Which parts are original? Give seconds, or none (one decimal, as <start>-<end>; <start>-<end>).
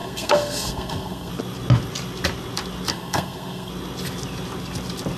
1.3-2.9; 3.7-5.2